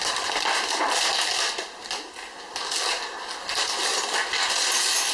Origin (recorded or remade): recorded